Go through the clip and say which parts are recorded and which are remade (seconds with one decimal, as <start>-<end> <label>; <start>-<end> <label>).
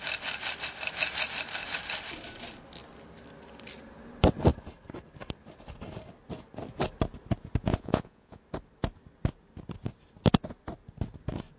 0.0-7.7 recorded; 7.7-8.4 remade; 8.4-11.6 recorded